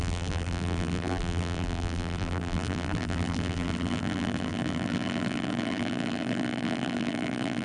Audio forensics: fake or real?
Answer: fake